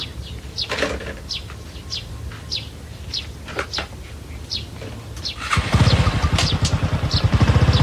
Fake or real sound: real